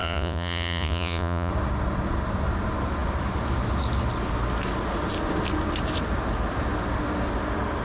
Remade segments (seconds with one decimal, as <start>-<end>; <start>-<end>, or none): 0.0-1.5